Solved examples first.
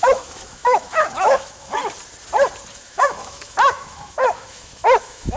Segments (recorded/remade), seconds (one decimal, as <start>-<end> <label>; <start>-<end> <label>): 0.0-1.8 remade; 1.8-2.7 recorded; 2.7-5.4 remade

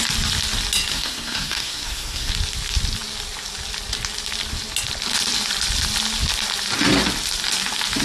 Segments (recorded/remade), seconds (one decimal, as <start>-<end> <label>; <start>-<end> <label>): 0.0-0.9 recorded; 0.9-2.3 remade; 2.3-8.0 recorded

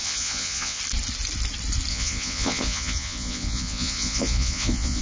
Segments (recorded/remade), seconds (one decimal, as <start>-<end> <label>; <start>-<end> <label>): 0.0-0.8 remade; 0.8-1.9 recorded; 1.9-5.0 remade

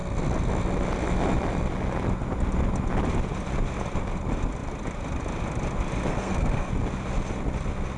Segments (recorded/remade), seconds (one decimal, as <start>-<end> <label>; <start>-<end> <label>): 0.0-6.1 recorded; 6.1-6.7 remade; 6.7-8.0 recorded

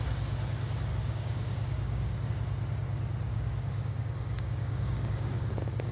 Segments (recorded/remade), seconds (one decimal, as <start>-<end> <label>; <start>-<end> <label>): 0.0-0.9 recorded; 0.9-2.3 remade; 2.3-3.3 recorded; 3.3-5.9 remade

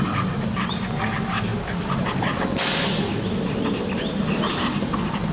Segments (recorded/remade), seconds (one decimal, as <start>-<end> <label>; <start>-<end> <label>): 0.0-5.3 recorded

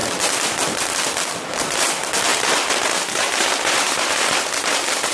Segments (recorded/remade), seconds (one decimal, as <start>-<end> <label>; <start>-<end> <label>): 0.0-1.5 recorded; 1.5-5.1 remade